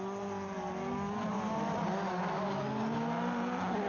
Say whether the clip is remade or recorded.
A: recorded